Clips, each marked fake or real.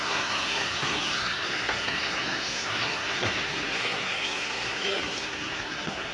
fake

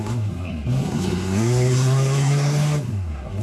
fake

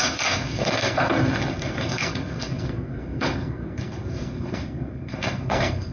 fake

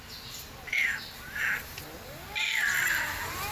real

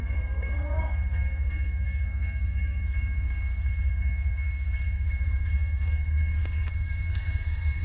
fake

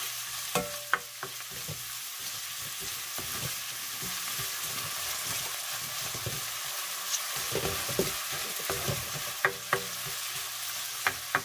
real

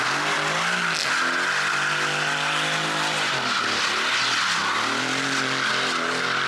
real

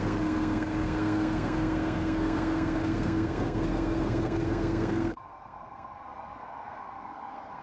fake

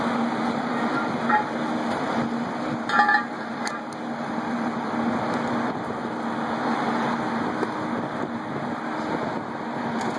real